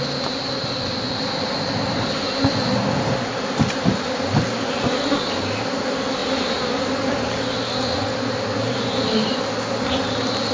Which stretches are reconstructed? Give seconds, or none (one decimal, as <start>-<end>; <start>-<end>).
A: none

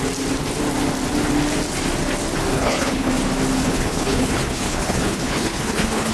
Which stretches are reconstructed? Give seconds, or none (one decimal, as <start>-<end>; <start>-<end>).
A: 2.5-3.1; 3.6-6.1

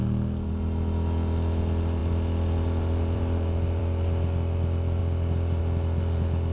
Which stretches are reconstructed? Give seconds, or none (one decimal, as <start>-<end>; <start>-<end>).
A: 2.0-3.8; 5.0-5.6